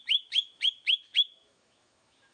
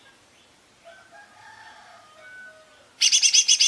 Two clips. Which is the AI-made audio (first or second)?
first